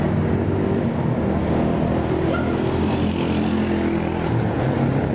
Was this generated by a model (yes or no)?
no